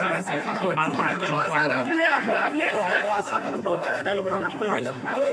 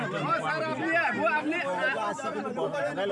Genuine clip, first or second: second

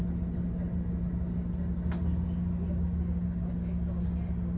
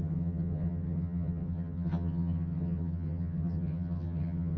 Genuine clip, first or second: first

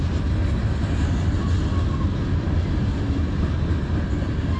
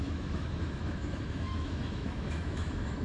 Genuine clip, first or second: first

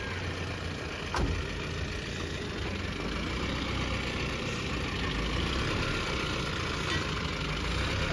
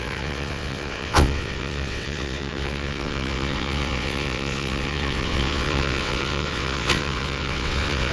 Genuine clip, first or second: first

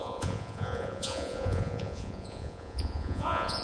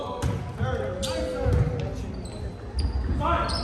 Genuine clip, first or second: second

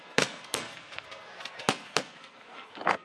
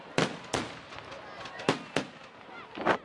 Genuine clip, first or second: second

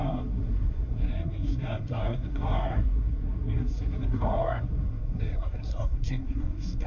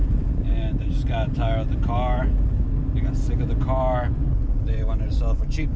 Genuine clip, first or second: second